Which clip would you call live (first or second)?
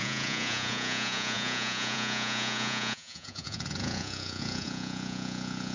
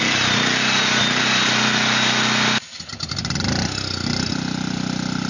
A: second